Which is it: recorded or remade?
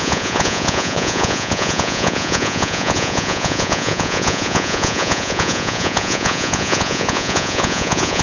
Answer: remade